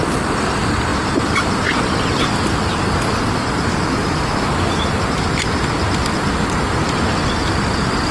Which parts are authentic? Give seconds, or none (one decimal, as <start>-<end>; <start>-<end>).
0.0-8.1